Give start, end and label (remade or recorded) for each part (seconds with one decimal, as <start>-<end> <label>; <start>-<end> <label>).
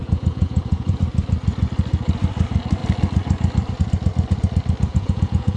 0.0-1.0 remade; 1.0-4.9 recorded; 4.9-5.6 remade